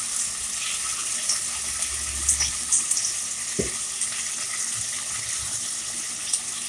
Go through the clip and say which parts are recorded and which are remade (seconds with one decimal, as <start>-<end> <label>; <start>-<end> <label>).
0.0-6.7 recorded